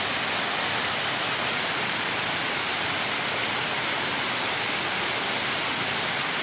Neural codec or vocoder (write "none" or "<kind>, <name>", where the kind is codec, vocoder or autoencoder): none